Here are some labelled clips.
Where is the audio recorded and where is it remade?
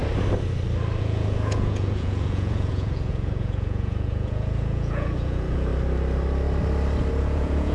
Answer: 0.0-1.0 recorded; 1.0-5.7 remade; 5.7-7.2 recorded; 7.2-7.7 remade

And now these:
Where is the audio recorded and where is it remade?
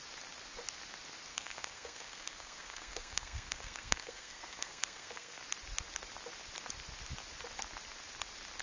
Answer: 0.0-1.3 recorded; 1.3-5.4 remade; 5.4-8.6 recorded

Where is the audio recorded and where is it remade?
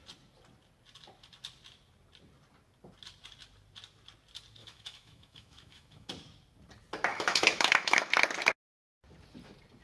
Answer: 0.0-4.6 recorded; 4.6-6.1 remade; 6.1-7.1 recorded; 7.1-8.1 remade; 8.1-9.8 recorded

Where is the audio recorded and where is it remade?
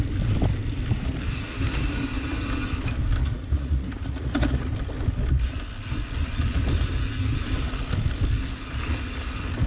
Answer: 0.0-3.2 recorded; 3.2-4.7 remade; 4.7-9.7 recorded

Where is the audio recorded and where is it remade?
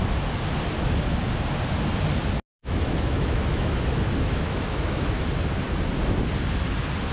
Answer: 0.0-2.5 recorded; 2.5-5.1 remade; 5.1-7.1 recorded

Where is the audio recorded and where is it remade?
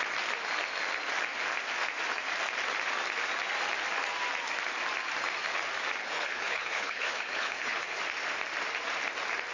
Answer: 0.0-6.0 recorded; 6.0-8.0 remade; 8.0-9.5 recorded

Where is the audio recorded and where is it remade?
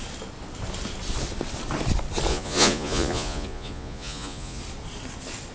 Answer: 0.0-2.3 recorded; 2.3-4.6 remade; 4.6-5.5 recorded